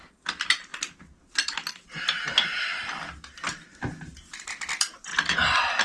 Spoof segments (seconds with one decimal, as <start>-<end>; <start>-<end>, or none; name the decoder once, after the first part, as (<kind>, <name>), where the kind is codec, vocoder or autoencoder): 0.0-0.7 (vocoder, BigVGAN v2); 4.2-5.1